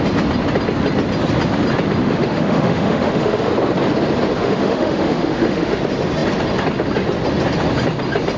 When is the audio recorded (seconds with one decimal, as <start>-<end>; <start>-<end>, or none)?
0.0-2.0; 3.5-4.4; 5.8-8.4